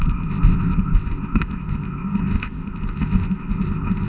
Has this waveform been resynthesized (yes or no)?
yes